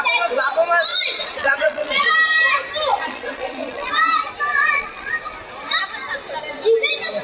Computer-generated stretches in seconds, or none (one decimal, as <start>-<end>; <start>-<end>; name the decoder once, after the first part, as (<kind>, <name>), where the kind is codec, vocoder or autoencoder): 0.9-2.1 (vocoder, Vocos); 2.9-3.9; 4.5-5.1